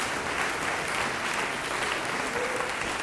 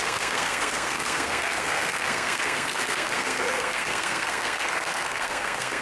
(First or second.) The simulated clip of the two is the second